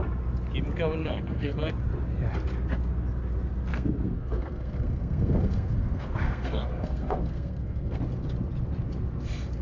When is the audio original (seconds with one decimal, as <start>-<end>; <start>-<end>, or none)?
0.0-1.0; 1.7-3.7; 8.0-9.6